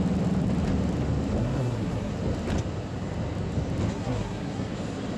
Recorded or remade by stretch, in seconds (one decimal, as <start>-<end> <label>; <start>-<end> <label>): 0.0-1.4 recorded; 1.4-2.1 remade; 2.1-3.9 recorded; 3.9-4.7 remade; 4.7-5.2 recorded